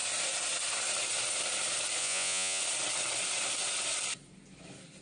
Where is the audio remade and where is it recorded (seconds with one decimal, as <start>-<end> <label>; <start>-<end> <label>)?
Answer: 0.0-2.0 recorded; 2.0-2.6 remade; 2.6-5.0 recorded